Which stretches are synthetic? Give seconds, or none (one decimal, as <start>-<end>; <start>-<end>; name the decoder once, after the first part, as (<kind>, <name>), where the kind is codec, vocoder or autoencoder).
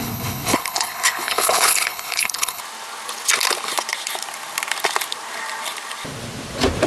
0.0-2.6 (codec, HILCodec)